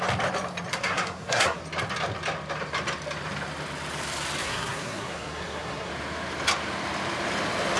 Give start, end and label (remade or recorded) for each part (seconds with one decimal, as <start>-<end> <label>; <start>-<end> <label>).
0.0-0.7 recorded; 0.7-1.6 remade; 1.6-4.4 recorded; 4.4-5.9 remade; 5.9-7.8 recorded